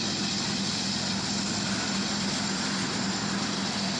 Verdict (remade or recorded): recorded